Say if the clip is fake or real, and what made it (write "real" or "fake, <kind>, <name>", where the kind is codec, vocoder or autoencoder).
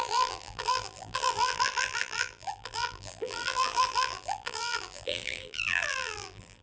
fake, vocoder, BigVGAN v2